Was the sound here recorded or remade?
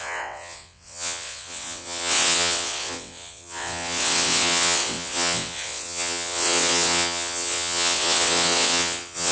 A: remade